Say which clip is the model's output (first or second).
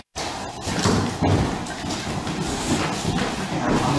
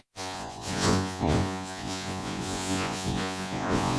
second